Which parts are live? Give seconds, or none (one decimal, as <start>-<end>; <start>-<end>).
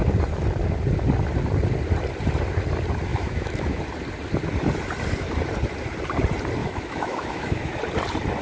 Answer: 0.0-3.1; 3.8-6.6; 7.8-8.4